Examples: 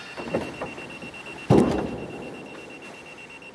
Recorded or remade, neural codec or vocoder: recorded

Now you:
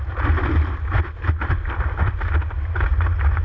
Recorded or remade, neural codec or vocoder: recorded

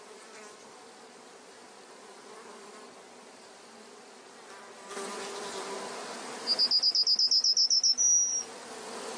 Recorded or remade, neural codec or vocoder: recorded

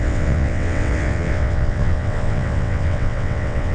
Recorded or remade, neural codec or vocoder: remade, vocoder, WaveNeXt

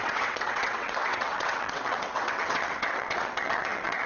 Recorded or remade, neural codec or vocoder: remade, vocoder, WaveNeXt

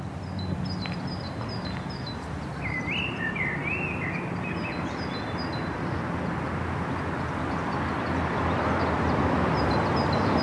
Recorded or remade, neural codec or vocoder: recorded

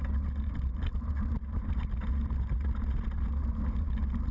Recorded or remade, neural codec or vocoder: recorded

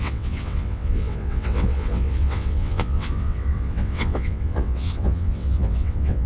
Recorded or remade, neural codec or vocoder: remade, vocoder, WaveNeXt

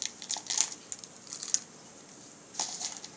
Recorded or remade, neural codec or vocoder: recorded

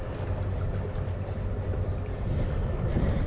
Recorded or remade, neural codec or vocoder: recorded